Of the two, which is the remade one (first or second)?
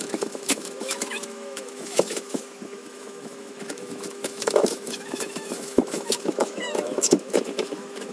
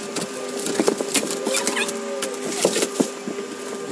first